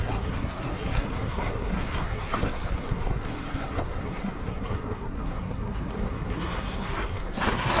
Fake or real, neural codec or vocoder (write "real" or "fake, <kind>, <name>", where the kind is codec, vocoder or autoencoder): fake, codec, SNAC